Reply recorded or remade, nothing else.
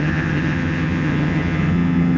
remade